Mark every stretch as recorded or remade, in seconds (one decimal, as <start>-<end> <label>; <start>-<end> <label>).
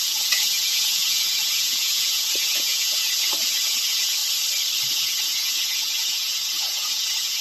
0.0-4.2 remade; 4.2-4.9 recorded; 4.9-7.4 remade